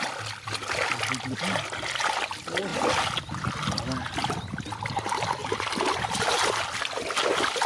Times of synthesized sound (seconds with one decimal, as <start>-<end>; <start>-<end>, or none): 5.4-6.0